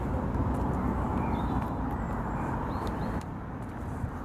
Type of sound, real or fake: fake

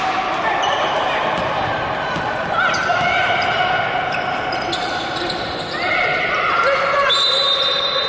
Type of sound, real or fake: real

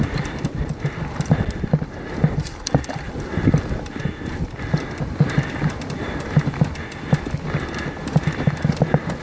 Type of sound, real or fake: real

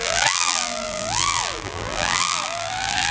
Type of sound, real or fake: fake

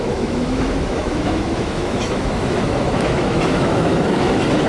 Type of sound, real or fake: fake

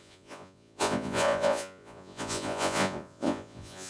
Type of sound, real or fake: fake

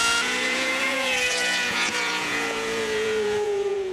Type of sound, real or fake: fake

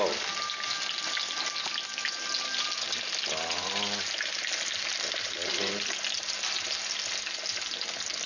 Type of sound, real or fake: real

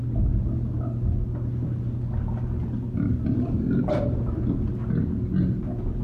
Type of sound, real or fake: real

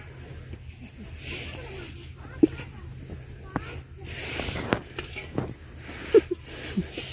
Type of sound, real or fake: real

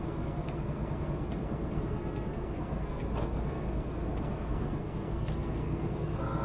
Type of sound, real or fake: fake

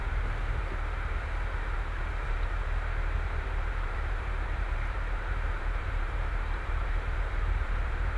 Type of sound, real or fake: fake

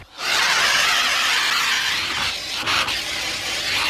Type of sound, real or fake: real